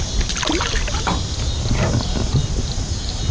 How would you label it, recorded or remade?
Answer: recorded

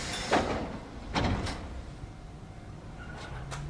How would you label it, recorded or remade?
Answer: recorded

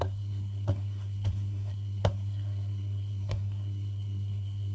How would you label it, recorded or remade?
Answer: remade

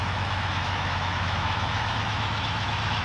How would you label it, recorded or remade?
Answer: remade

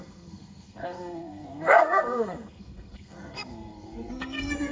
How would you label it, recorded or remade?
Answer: remade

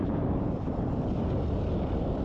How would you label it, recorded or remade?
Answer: remade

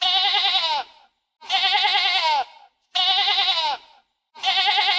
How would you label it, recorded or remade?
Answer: recorded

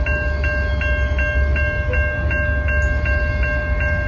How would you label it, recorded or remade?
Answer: recorded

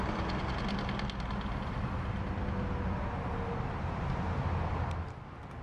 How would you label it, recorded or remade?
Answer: recorded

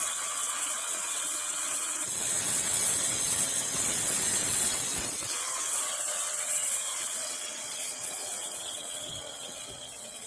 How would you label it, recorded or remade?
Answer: remade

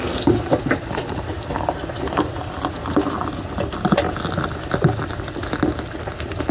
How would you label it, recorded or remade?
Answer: recorded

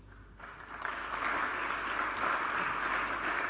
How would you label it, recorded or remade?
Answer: recorded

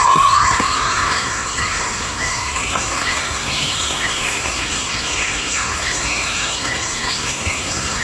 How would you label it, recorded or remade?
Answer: remade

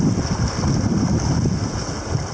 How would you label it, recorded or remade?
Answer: recorded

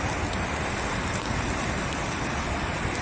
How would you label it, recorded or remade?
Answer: recorded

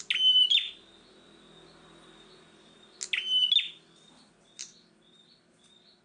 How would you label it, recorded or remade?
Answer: recorded